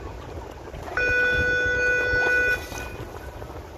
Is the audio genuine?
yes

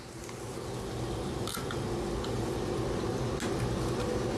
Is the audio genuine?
yes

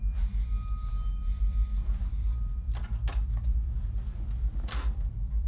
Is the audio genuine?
yes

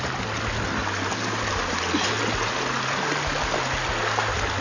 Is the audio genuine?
yes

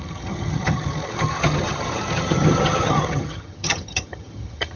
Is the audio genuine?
no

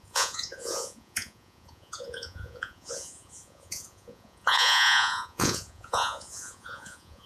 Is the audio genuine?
no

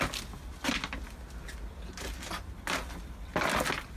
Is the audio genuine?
yes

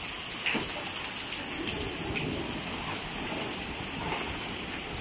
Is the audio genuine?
yes